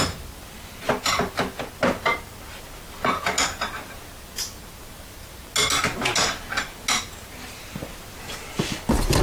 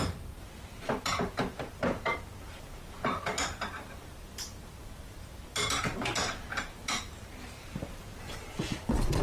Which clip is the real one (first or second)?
first